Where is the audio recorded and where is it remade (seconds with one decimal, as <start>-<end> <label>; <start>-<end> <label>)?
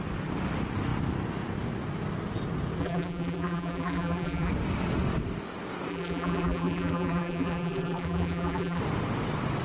0.0-2.8 recorded; 2.8-4.5 remade; 4.5-5.9 recorded; 5.9-8.8 remade; 8.8-9.6 recorded